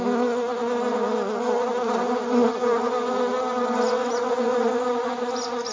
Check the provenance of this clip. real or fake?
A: real